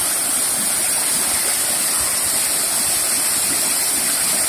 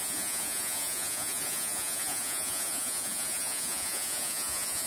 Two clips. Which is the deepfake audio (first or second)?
second